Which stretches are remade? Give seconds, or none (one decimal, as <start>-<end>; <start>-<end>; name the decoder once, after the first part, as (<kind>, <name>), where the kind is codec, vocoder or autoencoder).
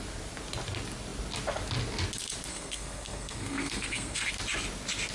2.5-4.3 (codec, SNAC)